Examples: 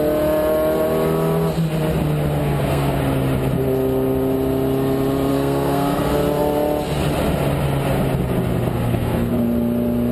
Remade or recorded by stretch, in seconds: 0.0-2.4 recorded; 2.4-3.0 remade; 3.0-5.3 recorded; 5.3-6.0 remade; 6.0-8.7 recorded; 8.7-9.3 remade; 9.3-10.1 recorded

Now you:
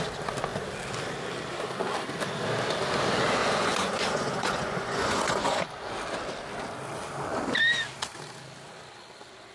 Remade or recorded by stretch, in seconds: 0.0-3.4 recorded; 3.4-5.7 remade; 5.7-9.5 recorded

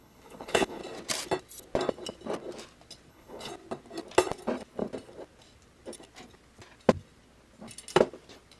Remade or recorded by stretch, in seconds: 0.0-0.8 remade; 0.8-3.1 recorded; 3.1-3.5 remade; 3.5-8.6 recorded